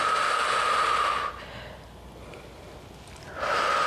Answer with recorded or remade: recorded